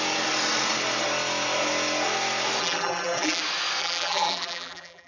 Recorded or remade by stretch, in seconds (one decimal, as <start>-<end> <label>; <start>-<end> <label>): 0.0-2.6 recorded; 2.6-3.4 remade; 3.4-3.8 recorded; 3.8-5.1 remade